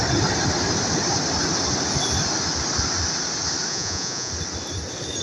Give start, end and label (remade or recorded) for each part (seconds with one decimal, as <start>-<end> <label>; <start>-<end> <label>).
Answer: 0.0-3.7 recorded; 3.7-4.3 remade; 4.3-5.2 recorded